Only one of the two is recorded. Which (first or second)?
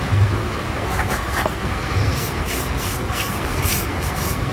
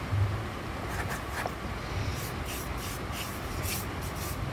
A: second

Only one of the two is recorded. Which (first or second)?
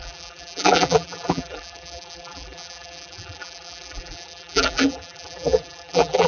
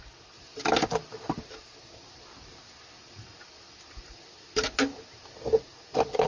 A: second